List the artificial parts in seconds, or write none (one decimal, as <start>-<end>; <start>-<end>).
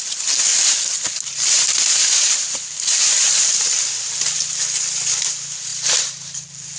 0.5-3.8; 5.7-6.8